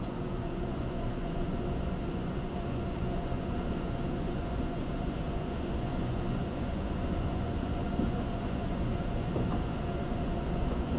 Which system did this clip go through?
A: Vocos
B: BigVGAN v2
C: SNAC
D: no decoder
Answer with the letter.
A